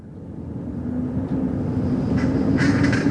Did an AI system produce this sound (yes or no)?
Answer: no